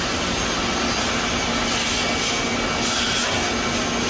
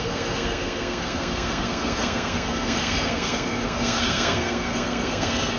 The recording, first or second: first